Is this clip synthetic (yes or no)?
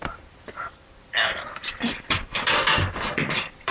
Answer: yes